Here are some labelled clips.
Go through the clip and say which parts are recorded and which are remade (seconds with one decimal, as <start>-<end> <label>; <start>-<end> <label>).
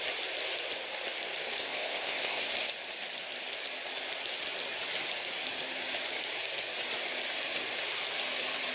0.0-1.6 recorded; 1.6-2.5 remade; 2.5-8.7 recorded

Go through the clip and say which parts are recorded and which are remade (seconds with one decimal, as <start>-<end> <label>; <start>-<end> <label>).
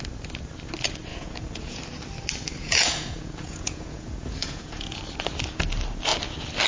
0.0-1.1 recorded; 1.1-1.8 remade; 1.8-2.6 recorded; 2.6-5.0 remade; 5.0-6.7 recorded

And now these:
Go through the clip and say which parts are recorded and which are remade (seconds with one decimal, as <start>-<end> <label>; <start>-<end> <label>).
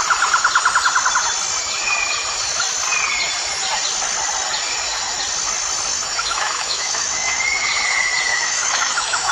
0.0-5.9 recorded; 5.9-7.4 remade; 7.4-8.3 recorded; 8.3-9.3 remade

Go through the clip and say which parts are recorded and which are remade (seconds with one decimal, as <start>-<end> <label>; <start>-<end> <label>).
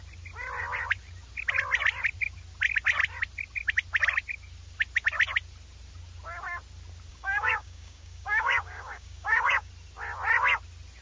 0.0-7.1 recorded; 7.1-9.7 remade; 9.7-11.0 recorded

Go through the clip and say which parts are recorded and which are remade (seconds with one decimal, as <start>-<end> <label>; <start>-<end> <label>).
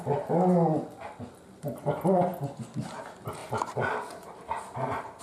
0.0-3.4 recorded; 3.4-5.2 remade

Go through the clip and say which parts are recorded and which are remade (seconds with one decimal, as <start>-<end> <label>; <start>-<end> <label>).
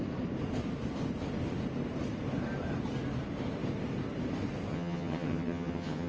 0.0-4.7 recorded; 4.7-6.1 remade